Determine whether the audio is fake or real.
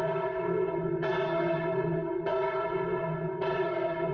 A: fake